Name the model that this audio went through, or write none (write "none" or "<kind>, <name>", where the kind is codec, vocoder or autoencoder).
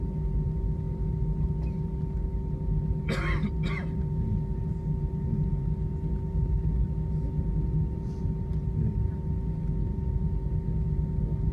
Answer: none